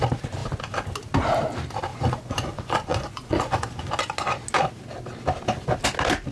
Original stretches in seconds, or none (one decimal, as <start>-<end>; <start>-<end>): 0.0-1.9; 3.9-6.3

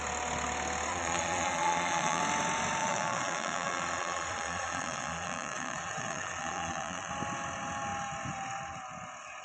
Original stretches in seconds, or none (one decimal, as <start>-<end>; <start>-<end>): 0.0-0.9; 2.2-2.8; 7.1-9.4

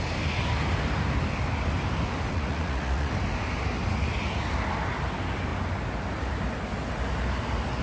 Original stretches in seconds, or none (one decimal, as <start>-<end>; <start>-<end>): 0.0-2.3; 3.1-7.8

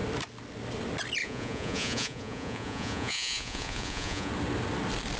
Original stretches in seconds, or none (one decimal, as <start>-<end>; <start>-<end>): 0.0-1.2; 4.3-5.2

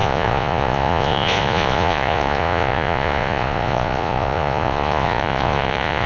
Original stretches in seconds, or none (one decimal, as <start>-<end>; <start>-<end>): none

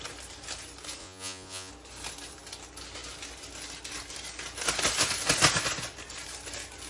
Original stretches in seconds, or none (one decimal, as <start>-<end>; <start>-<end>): 0.0-1.0; 1.7-6.9

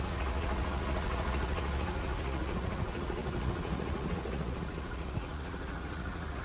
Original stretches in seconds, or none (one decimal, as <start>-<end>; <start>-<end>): none

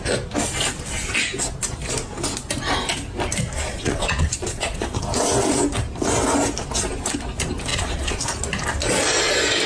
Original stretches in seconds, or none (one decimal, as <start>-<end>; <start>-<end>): 0.0-3.7; 5.0-7.7; 8.2-9.7